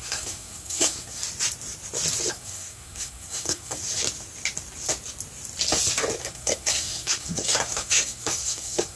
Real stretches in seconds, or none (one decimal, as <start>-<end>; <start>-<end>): 1.2-2.3; 3.8-6.2